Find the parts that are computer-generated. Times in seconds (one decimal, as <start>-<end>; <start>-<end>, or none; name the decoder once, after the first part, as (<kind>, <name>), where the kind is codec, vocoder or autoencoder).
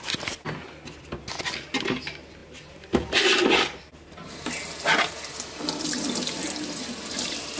none